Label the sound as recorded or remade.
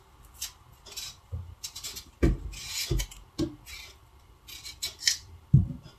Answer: recorded